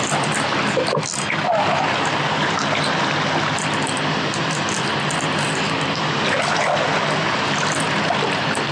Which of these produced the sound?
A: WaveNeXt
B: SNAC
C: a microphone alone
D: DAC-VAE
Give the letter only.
C